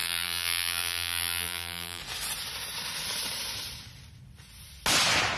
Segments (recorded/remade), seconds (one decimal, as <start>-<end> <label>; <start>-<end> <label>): 0.0-2.0 remade; 2.0-5.4 recorded